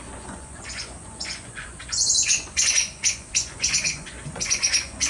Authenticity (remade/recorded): remade